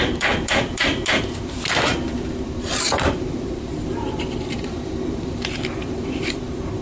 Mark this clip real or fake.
fake